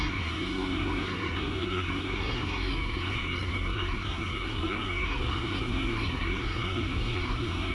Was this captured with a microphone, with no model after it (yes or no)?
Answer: no